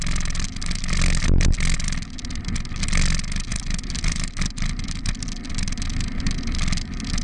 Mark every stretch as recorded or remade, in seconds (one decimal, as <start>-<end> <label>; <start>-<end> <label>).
0.0-3.5 recorded; 3.5-5.5 remade; 5.5-7.2 recorded